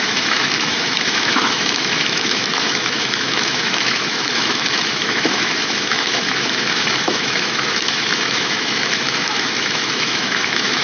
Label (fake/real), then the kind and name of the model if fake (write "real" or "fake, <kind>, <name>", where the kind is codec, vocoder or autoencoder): fake, autoencoder, DAC-VAE